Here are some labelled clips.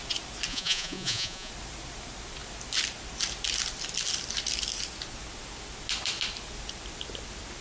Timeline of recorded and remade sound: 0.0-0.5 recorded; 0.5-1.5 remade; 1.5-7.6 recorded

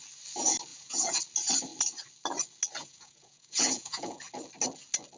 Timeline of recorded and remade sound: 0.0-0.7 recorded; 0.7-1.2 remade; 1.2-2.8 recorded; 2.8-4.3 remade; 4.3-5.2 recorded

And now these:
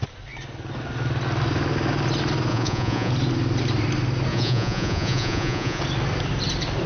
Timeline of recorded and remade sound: 0.0-2.5 recorded; 2.5-3.1 remade; 3.1-4.3 recorded; 4.3-5.8 remade; 5.8-6.9 recorded